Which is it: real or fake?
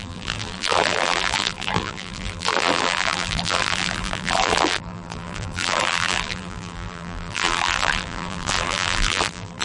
fake